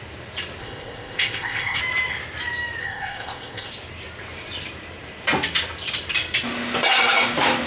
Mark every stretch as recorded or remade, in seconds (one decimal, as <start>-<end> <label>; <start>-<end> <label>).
0.0-0.6 recorded; 0.6-1.8 remade; 1.8-2.8 recorded; 2.8-3.7 remade; 3.7-7.7 recorded